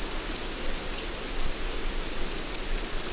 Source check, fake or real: real